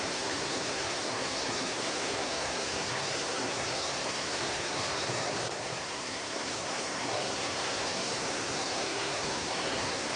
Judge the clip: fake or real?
fake